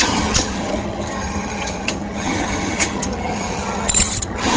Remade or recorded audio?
remade